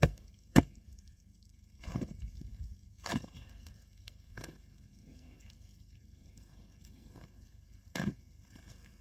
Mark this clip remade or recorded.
remade